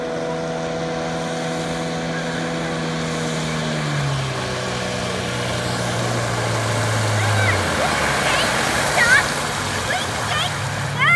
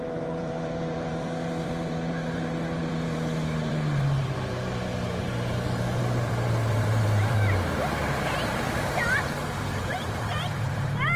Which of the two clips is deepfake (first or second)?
second